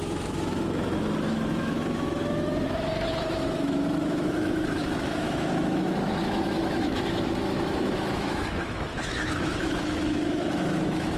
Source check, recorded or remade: remade